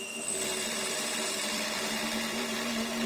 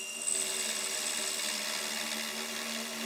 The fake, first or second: first